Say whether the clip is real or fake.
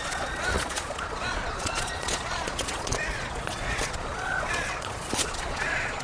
fake